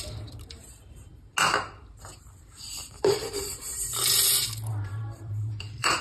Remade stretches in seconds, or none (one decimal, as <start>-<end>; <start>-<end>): 0.0-1.1; 1.7-6.0